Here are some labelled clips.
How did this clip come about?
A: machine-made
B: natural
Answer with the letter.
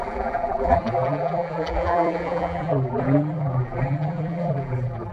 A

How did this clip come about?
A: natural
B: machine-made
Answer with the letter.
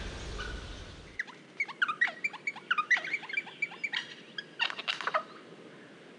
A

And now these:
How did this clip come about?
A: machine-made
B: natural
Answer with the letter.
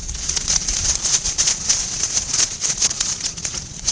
A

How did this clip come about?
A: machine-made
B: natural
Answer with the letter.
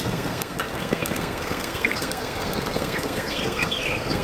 A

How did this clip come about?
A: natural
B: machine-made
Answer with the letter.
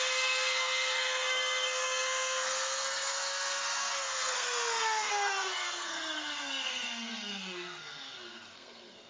B